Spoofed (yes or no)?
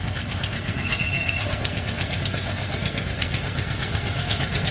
yes